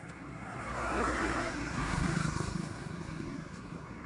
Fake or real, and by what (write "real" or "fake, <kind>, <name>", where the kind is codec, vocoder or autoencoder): fake, codec, SNAC